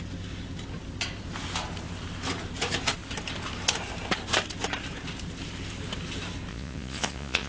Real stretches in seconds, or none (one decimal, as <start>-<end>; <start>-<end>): 0.0-6.5